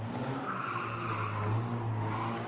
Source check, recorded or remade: recorded